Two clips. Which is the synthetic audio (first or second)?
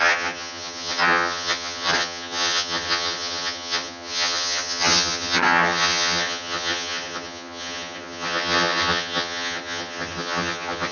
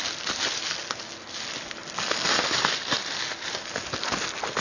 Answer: first